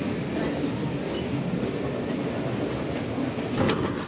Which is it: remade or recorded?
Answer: recorded